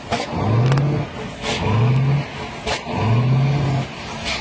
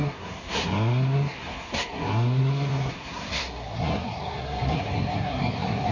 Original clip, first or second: first